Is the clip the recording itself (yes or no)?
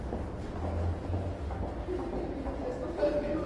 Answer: yes